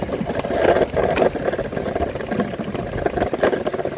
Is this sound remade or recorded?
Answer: recorded